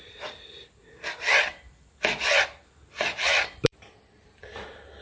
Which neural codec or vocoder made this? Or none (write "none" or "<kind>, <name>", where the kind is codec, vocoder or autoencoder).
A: vocoder, BigVGAN v2